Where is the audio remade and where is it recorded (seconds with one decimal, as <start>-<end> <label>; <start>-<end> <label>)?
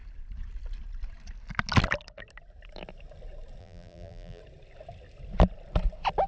0.0-3.6 recorded; 3.6-4.4 remade; 4.4-6.3 recorded